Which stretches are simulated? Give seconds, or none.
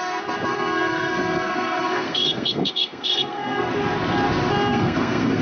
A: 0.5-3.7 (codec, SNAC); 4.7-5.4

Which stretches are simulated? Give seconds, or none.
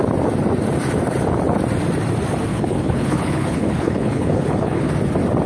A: 2.5-4.9 (codec, HILCodec)